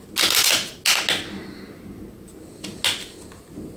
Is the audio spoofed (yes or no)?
no